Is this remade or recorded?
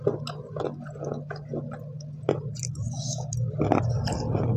recorded